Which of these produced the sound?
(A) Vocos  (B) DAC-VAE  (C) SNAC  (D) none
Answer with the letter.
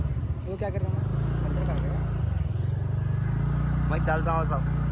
D